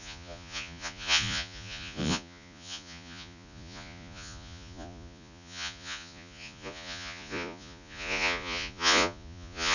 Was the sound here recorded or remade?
remade